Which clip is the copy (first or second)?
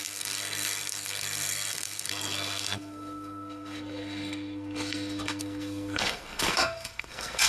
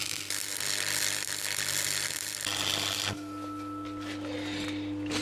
first